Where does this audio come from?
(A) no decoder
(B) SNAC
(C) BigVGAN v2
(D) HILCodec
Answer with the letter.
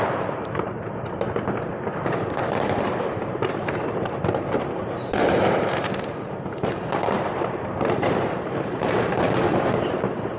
C